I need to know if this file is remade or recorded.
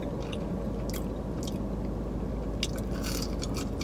recorded